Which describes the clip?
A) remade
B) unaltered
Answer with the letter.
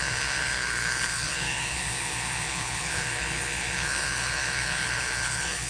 A